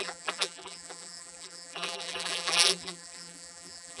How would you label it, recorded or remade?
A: remade